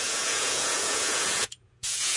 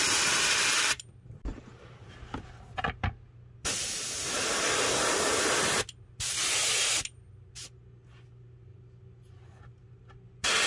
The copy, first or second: first